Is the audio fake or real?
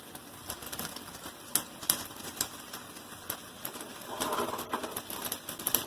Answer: real